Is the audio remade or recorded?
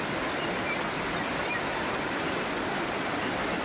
recorded